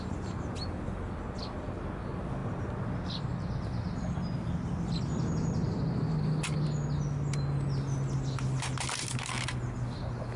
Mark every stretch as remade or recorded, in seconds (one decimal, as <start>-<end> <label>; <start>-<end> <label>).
0.0-10.4 recorded